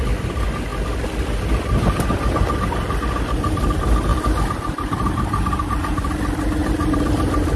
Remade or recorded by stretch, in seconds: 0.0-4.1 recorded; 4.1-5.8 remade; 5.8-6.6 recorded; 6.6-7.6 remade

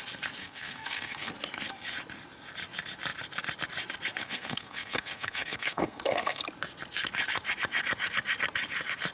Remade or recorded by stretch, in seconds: 0.0-0.4 recorded; 0.4-1.3 remade; 1.3-4.2 recorded; 4.2-6.4 remade; 6.4-9.1 recorded

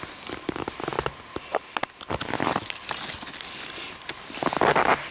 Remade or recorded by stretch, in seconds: 0.0-5.1 recorded

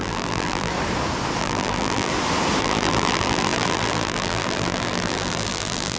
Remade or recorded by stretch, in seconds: 0.0-0.7 remade; 0.7-1.4 recorded; 1.4-2.1 remade; 2.1-2.6 recorded; 2.6-6.0 remade

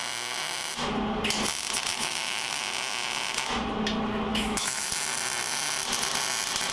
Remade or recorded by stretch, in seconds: 0.0-1.9 recorded; 1.9-2.6 remade; 2.6-4.3 recorded; 4.3-4.9 remade; 4.9-6.7 recorded

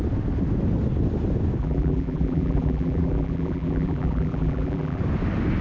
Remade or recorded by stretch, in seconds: 0.0-1.6 recorded; 1.6-5.0 remade; 5.0-5.6 recorded

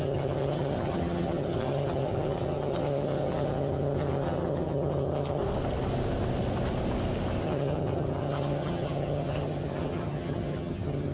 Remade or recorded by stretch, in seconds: 0.0-5.4 remade; 5.4-7.4 recorded; 7.4-11.1 remade